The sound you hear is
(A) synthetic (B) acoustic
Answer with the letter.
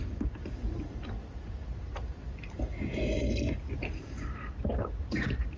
B